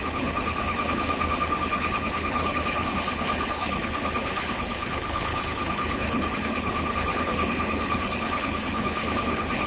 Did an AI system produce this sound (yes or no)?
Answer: yes